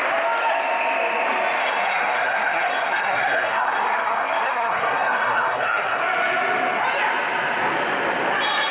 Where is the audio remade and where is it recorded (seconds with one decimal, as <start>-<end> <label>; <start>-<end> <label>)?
0.0-1.6 recorded; 1.6-6.0 remade; 6.0-8.7 recorded